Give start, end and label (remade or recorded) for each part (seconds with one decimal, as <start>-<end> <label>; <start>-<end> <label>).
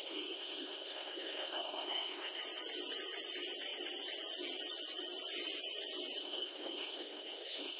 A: 0.0-2.4 remade; 2.4-6.2 recorded; 6.2-7.8 remade